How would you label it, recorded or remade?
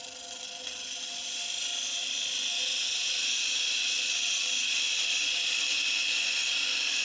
recorded